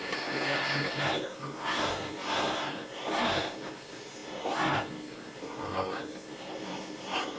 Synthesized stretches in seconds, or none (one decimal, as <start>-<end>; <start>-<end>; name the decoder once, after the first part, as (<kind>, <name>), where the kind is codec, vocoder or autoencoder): 0.0-7.4 (codec, SNAC)

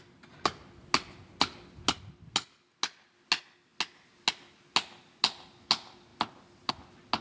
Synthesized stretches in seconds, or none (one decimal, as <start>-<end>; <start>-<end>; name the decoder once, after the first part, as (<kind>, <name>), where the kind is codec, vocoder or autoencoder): none

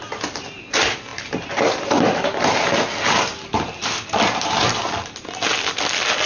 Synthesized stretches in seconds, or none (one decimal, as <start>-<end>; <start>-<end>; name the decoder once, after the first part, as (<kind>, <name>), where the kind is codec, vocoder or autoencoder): none

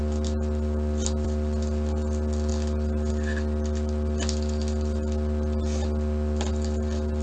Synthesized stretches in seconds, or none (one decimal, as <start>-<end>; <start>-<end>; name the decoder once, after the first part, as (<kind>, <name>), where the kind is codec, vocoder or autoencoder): none

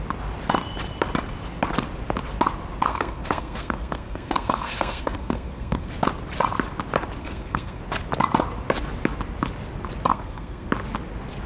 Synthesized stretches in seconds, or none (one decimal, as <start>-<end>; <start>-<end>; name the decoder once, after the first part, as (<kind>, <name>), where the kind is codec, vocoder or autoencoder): 2.9-5.9 (codec, SNAC); 7.2-7.8; 10.1-10.7

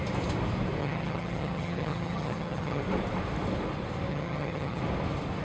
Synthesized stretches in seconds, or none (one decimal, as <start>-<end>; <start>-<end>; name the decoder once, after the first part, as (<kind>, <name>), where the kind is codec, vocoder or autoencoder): 0.8-2.8 (vocoder, HiFi-GAN); 4.1-4.8

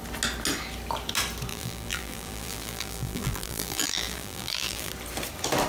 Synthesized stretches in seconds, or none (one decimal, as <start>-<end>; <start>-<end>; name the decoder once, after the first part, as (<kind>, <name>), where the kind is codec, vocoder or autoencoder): 1.5-4.9 (vocoder, BigVGAN v2)

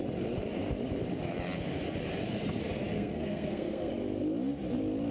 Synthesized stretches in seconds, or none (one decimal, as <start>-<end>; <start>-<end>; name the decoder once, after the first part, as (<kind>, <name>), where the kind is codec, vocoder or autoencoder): 2.9-3.9 (codec, SNAC)